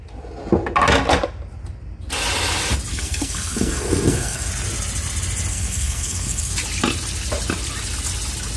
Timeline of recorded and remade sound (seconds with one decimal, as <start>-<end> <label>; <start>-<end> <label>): 0.0-2.9 recorded; 2.9-4.5 remade; 4.5-5.5 recorded; 5.5-6.5 remade; 6.5-8.6 recorded